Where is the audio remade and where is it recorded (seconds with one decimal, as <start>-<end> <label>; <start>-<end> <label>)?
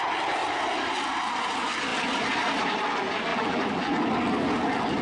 0.0-3.3 recorded; 3.3-4.0 remade; 4.0-5.0 recorded